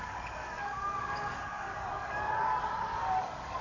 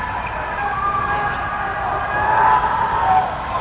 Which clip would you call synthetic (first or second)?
first